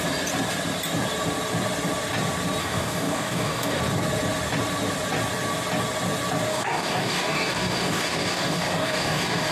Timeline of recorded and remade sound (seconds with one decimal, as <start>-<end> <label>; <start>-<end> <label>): 0.0-2.6 recorded; 2.6-3.8 remade; 3.8-6.5 recorded; 6.5-9.5 remade